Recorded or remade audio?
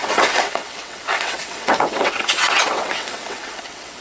remade